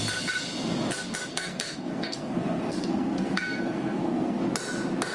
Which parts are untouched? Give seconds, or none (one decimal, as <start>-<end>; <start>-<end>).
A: 0.0-1.3; 4.4-5.1